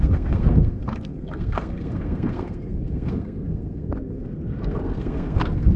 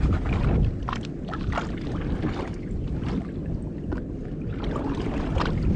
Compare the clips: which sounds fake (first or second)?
first